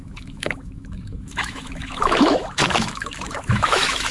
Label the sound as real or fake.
fake